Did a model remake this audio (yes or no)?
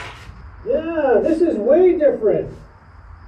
no